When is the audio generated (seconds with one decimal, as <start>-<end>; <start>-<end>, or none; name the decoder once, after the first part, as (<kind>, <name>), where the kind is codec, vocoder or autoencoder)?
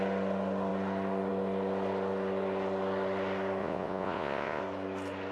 3.6-4.6 (vocoder, Vocos)